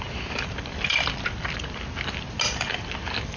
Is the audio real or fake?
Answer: real